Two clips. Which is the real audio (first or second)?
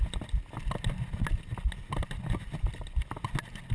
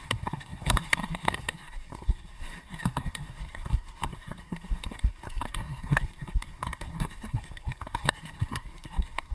first